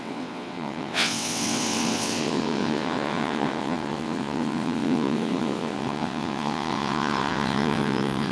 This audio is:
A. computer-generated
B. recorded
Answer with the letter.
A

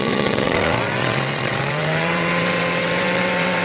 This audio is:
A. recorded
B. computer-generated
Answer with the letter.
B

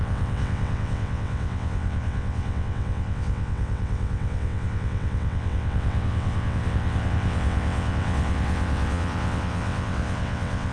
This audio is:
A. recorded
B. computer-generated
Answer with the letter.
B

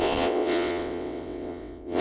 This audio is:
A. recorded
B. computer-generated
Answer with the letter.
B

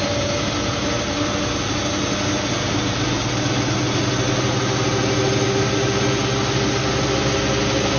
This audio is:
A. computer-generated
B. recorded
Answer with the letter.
B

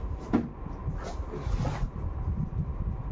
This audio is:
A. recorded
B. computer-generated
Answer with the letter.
A